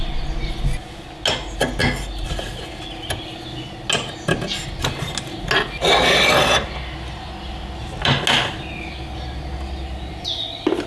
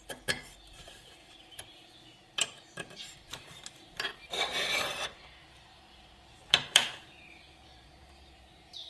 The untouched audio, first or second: first